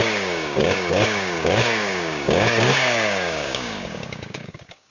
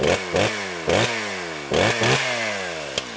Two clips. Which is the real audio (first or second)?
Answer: second